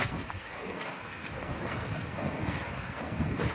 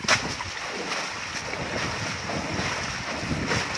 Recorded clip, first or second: second